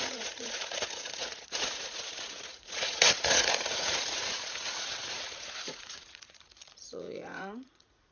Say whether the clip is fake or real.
fake